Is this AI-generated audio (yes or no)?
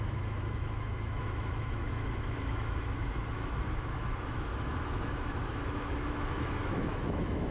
yes